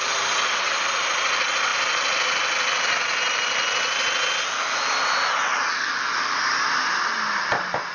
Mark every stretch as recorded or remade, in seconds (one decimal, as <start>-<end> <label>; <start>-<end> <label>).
0.0-7.9 recorded